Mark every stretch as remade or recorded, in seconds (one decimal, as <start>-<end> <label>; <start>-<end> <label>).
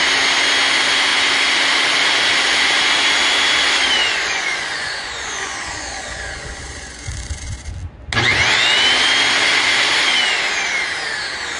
0.0-4.0 recorded; 4.0-7.7 remade; 7.7-11.6 recorded